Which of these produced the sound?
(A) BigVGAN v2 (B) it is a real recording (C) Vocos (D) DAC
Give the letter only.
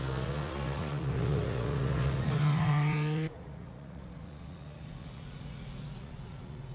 C